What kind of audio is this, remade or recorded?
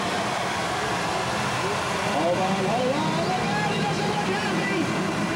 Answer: recorded